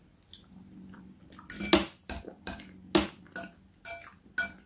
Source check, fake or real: real